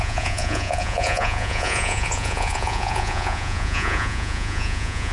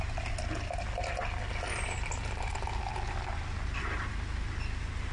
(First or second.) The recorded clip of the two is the second